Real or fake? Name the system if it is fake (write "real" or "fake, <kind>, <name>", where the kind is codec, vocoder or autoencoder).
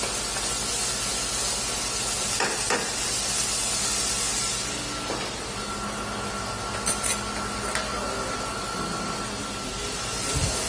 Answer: real